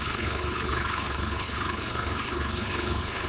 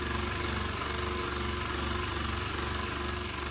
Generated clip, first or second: first